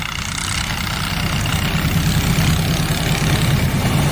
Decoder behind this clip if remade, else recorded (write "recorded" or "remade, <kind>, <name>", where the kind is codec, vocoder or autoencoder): recorded